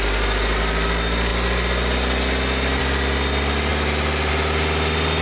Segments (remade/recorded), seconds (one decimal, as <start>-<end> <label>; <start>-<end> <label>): 0.0-5.2 recorded